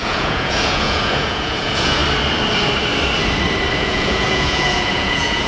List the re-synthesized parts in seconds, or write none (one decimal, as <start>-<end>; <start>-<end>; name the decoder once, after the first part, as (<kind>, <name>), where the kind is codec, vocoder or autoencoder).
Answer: 0.0-2.0 (vocoder, Vocos); 3.8-5.5